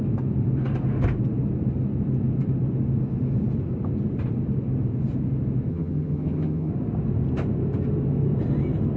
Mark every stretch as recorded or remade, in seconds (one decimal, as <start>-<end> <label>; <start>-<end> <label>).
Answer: 0.0-5.7 recorded; 5.7-6.7 remade; 6.7-9.0 recorded